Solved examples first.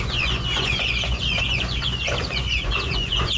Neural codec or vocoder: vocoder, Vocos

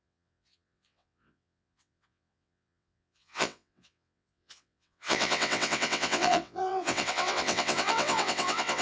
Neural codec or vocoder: vocoder, WaveNeXt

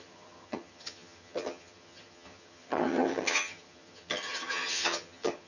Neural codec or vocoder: vocoder, HiFi-GAN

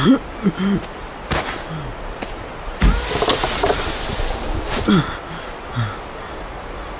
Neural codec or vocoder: none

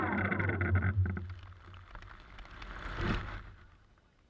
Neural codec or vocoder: none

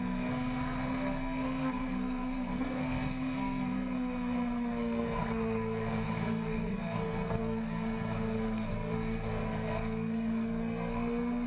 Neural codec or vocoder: codec, SNAC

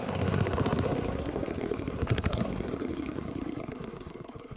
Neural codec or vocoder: codec, SNAC